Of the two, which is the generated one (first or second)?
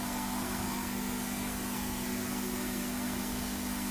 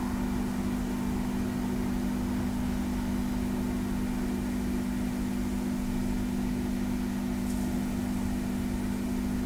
first